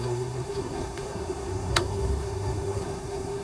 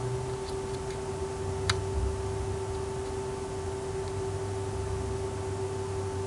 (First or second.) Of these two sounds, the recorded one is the second